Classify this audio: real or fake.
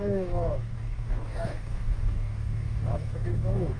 fake